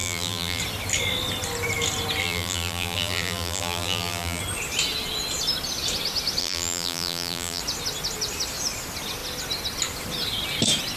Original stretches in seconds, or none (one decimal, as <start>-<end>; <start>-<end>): 0.6-2.2; 4.4-6.4; 7.6-11.0